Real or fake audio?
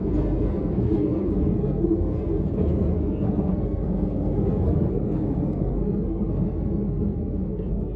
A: fake